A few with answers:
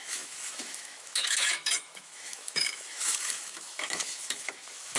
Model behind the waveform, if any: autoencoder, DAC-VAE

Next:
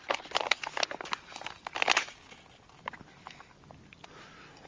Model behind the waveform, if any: none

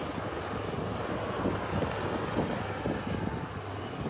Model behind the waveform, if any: none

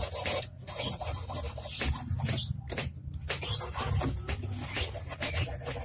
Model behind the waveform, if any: none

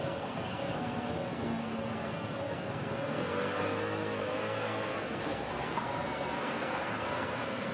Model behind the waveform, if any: codec, SNAC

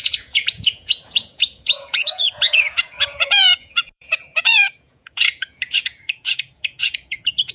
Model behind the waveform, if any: vocoder, Vocos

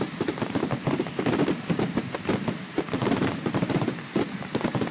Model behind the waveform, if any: vocoder, BigVGAN v2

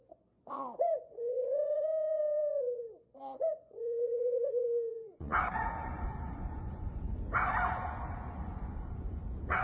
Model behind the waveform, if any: vocoder, Vocos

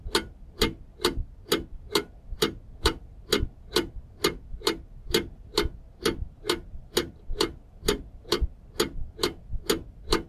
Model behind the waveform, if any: none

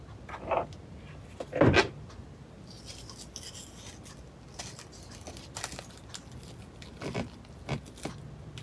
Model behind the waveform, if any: none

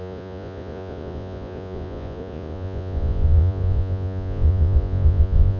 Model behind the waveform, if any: vocoder, Vocos